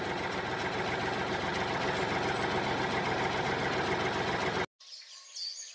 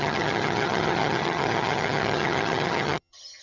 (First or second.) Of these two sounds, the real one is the first